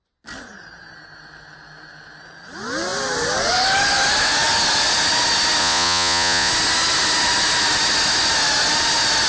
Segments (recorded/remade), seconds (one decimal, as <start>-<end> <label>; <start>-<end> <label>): 0.0-5.6 recorded; 5.6-6.5 remade; 6.5-9.3 recorded

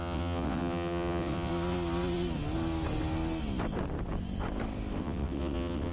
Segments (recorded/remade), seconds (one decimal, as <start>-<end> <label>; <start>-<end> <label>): 0.0-1.5 remade; 1.5-5.0 recorded; 5.0-5.9 remade